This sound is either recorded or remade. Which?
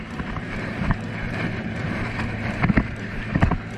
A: remade